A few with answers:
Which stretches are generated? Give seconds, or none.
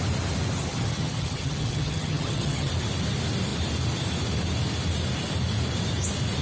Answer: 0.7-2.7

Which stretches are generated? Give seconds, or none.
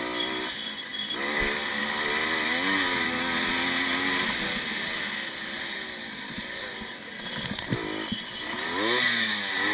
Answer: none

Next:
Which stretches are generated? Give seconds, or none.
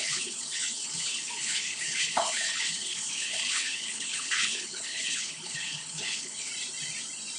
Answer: 0.0-6.5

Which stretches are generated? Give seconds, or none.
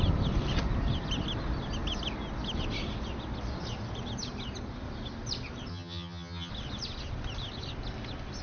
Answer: 5.7-6.5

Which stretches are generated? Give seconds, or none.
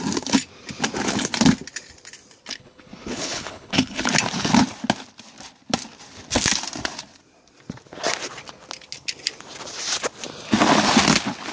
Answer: 2.5-4.1